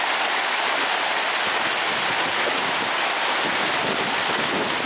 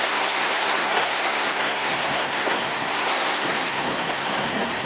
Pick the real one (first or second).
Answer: first